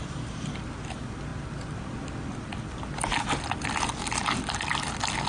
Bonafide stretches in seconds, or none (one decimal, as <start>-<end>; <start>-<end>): 0.0-5.3